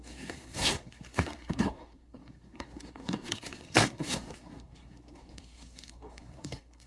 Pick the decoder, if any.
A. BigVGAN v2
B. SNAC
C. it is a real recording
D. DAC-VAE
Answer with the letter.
B